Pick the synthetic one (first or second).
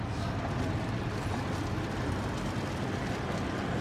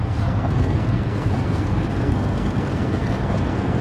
second